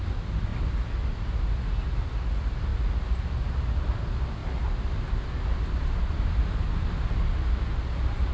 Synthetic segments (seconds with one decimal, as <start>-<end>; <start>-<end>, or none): none